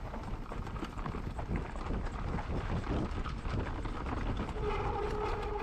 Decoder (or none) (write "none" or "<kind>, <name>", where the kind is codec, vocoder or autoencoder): none